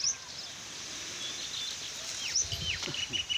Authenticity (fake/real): real